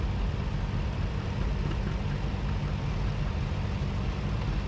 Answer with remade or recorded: recorded